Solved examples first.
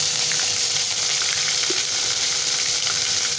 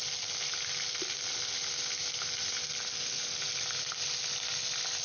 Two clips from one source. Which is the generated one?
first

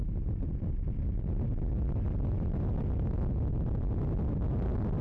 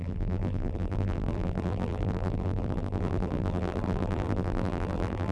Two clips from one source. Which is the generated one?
second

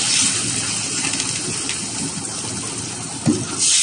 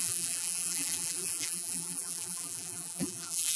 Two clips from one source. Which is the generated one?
second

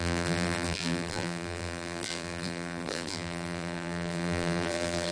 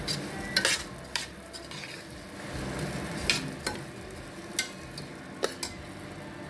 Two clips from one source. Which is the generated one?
first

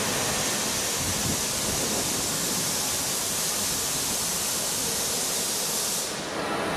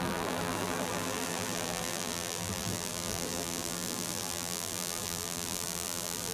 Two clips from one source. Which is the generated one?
second